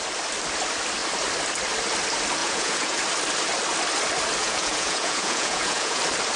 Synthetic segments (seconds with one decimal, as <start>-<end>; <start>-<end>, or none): 2.4-3.0; 4.4-6.0